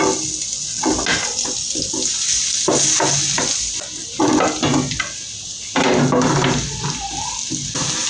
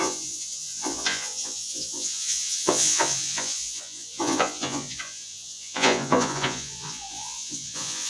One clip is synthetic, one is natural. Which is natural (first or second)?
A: first